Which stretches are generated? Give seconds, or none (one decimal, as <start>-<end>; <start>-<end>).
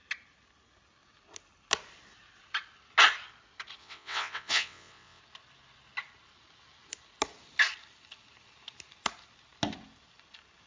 3.8-5.2